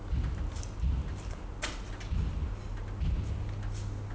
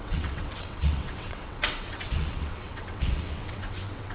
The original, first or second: first